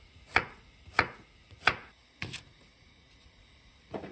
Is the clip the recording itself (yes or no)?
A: no